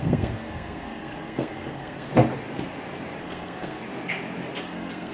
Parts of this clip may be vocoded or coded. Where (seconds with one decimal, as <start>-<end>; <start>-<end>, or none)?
0.0-2.1; 3.2-3.8; 4.6-5.1

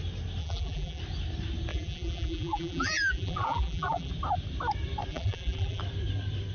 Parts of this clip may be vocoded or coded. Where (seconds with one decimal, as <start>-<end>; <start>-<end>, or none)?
0.4-1.0; 1.7-4.1; 5.1-5.8

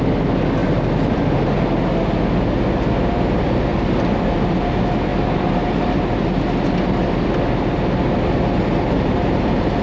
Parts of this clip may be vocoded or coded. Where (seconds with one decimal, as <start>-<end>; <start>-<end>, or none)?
0.6-1.2; 3.7-4.6; 5.1-7.3

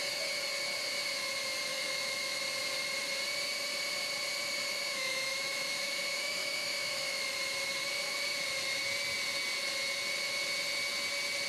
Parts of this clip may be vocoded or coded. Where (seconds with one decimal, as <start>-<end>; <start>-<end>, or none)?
1.7-2.4; 4.9-7.2; 7.8-8.4